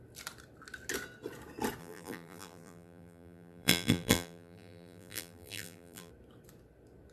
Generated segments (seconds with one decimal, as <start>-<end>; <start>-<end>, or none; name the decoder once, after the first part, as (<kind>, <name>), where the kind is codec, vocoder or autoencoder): 1.8-6.1 (vocoder, BigVGAN v2)